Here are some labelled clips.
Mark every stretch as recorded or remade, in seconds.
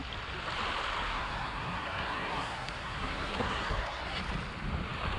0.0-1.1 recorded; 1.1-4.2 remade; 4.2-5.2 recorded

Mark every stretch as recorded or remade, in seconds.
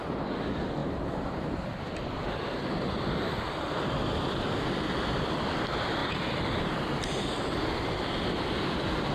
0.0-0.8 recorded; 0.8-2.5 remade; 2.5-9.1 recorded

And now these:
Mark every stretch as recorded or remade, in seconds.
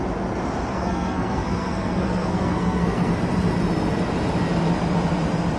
0.0-0.7 recorded; 0.7-3.1 remade; 3.1-5.6 recorded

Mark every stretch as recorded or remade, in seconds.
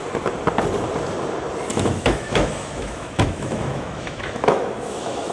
0.0-1.7 recorded; 1.7-5.3 remade